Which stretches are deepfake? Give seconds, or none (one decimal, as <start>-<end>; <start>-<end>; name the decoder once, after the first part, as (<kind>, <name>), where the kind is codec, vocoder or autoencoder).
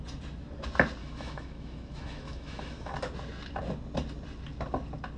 1.0-2.9 (autoencoder, DAC-VAE)